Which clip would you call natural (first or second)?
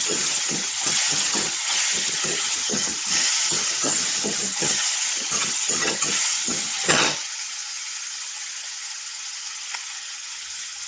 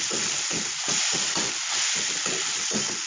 second